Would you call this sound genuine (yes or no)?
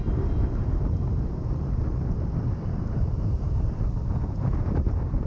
no